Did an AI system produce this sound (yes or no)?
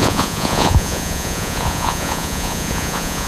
yes